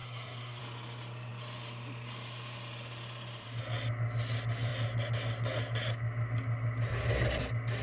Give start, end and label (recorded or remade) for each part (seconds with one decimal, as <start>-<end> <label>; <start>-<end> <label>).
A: 0.0-0.6 remade; 0.6-7.8 recorded